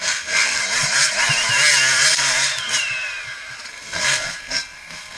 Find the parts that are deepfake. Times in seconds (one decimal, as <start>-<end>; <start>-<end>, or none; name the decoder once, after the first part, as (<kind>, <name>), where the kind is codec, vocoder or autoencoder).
0.0-0.6 (codec, SNAC); 3.7-5.2